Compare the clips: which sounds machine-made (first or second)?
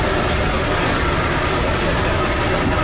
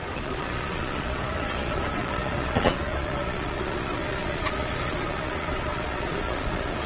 second